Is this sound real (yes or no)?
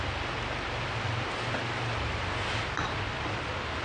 yes